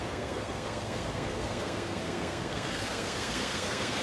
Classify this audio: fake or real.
fake